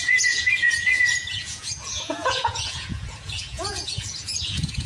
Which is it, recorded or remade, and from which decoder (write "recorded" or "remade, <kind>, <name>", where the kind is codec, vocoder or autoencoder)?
remade, vocoder, Vocos